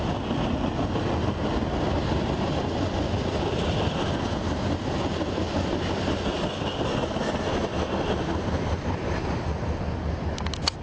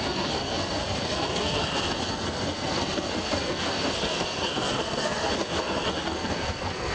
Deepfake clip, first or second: second